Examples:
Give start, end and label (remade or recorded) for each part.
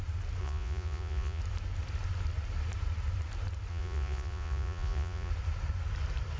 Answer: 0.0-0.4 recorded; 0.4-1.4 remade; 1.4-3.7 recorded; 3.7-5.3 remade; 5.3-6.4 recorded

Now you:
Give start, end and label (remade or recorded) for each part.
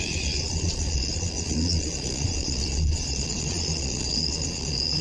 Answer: 0.0-5.0 remade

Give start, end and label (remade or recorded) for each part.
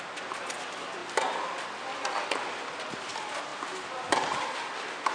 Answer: 0.0-5.1 recorded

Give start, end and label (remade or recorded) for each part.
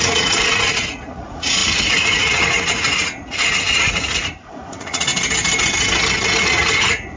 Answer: 0.0-5.1 remade; 5.1-6.4 recorded; 6.4-7.2 remade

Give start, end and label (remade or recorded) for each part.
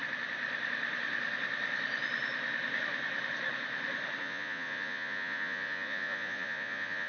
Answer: 0.0-4.2 recorded; 4.2-7.1 remade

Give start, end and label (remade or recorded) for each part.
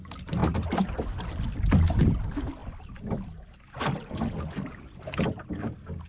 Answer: 0.0-6.1 recorded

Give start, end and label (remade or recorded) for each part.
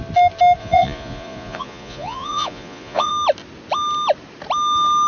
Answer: 0.0-0.6 recorded; 0.6-3.1 remade; 3.1-5.1 recorded